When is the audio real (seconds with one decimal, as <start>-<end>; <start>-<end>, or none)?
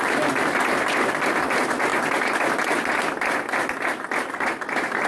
0.0-5.1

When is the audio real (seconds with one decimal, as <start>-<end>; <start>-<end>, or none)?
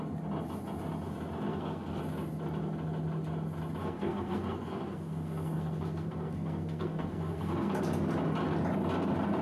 0.0-1.5; 2.0-3.8; 7.8-9.4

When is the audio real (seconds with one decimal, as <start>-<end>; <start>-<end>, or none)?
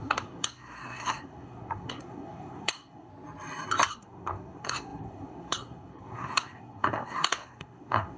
3.1-3.9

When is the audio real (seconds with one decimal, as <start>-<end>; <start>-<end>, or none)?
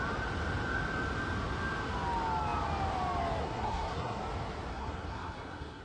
0.0-3.4; 4.2-4.7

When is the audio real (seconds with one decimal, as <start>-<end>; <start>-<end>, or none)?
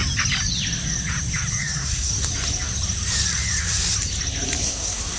0.0-1.6; 2.1-4.6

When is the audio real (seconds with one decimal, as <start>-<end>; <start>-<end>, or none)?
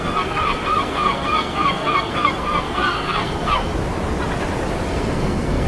3.7-4.9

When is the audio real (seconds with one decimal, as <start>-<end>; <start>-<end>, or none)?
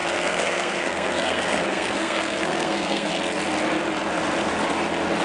3.1-5.2